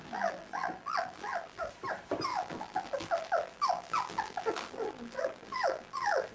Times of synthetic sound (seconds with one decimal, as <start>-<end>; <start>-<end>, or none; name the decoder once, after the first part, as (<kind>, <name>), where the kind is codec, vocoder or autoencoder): 0.0-1.7 (vocoder, BigVGAN v2); 2.3-6.3